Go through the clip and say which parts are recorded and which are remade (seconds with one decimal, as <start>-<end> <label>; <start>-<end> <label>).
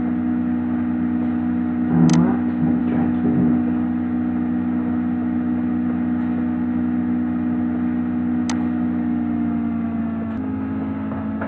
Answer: 0.0-11.5 recorded